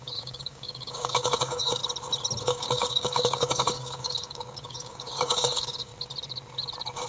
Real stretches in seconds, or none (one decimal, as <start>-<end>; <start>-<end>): 1.8-2.4; 5.9-7.1